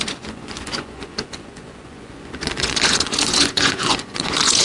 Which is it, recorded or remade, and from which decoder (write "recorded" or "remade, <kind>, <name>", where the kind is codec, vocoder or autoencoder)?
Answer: remade, vocoder, Vocos